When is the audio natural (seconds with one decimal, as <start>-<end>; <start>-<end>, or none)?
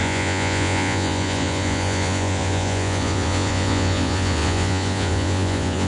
none